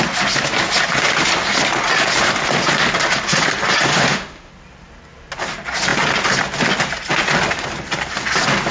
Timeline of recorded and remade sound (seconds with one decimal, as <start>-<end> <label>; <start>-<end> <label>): 0.0-3.9 recorded; 3.9-4.5 remade; 4.5-8.7 recorded